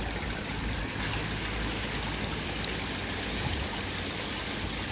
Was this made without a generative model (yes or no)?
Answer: yes